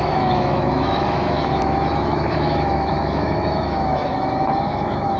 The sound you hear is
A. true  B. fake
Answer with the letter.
B